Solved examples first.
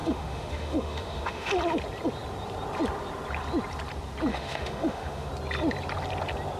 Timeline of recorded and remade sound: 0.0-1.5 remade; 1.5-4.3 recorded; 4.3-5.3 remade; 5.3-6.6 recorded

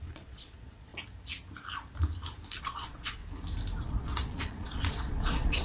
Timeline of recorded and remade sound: 0.0-0.9 remade; 0.9-2.6 recorded; 2.6-3.2 remade; 3.2-3.8 recorded; 3.8-5.6 remade